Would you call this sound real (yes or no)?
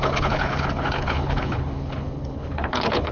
no